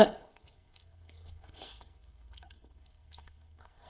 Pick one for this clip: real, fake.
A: fake